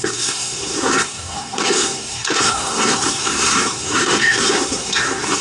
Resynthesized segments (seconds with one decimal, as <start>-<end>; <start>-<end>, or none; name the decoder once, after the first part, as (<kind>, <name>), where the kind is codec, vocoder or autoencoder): 0.0-5.4 (codec, SNAC)